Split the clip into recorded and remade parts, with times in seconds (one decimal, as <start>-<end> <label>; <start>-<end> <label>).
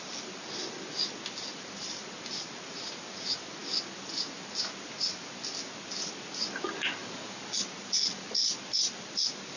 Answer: 0.0-9.6 recorded